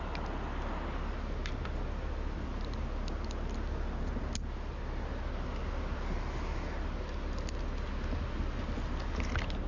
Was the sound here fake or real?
real